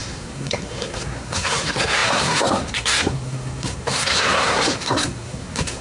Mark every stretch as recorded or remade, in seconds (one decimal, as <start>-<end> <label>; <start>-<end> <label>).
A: 0.0-5.8 remade